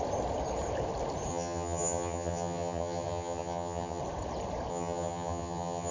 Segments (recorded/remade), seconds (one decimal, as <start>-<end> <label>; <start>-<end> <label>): 0.0-1.3 recorded; 1.3-4.0 remade; 4.0-4.7 recorded; 4.7-5.9 remade